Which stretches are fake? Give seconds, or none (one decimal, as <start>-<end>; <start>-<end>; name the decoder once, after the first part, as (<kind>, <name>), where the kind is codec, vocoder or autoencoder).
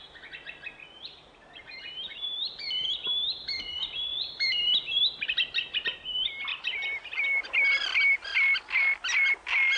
0.8-2.5 (vocoder, BigVGAN v2); 6.5-7.5